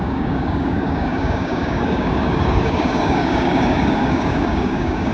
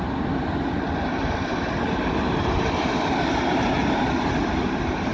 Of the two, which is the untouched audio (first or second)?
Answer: second